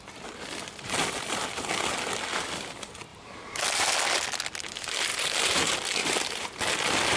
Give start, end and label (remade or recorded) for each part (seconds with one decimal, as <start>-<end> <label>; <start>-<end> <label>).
0.0-3.1 recorded; 3.1-3.9 remade; 3.9-5.1 recorded; 5.1-5.6 remade; 5.6-6.0 recorded; 6.0-6.6 remade; 6.6-7.2 recorded